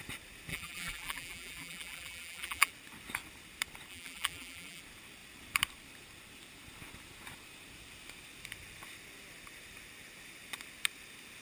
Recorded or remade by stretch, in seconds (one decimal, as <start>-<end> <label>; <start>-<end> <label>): 0.0-0.5 recorded; 0.5-2.7 remade; 2.7-3.9 recorded; 3.9-4.8 remade; 4.8-11.4 recorded